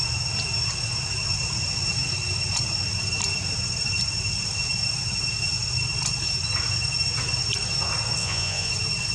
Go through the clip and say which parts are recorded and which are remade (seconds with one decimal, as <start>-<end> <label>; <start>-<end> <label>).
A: 0.0-8.2 recorded; 8.2-8.7 remade; 8.7-9.1 recorded